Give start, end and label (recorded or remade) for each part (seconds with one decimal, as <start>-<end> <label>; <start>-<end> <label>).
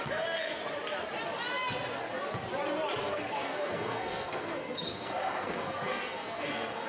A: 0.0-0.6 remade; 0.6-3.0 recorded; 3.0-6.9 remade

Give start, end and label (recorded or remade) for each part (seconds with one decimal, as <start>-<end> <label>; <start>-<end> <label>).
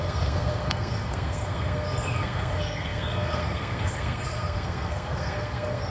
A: 0.0-5.9 remade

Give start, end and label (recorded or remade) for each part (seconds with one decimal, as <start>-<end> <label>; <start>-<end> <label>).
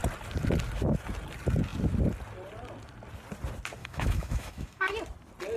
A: 0.0-3.8 recorded; 3.8-4.9 remade; 4.9-5.6 recorded